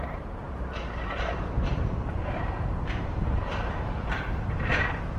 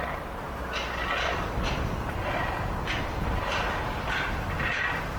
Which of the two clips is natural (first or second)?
second